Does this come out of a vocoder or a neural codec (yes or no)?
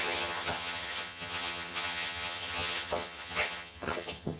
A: yes